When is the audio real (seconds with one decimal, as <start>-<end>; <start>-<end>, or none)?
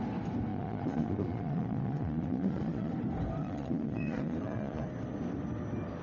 0.0-0.5; 2.9-3.4; 4.8-6.0